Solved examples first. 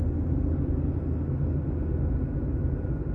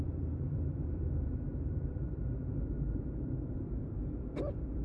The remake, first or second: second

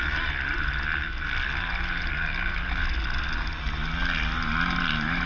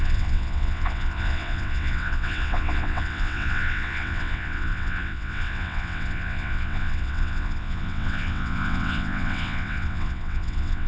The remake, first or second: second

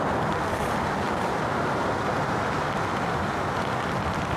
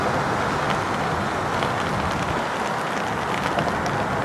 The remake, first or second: first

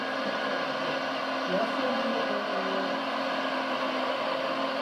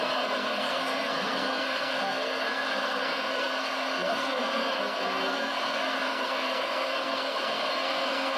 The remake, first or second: second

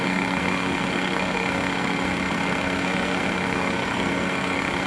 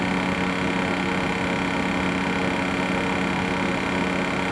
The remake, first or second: first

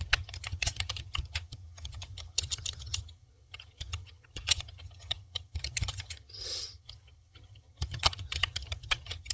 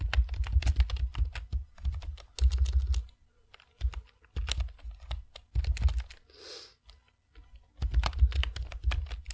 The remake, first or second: first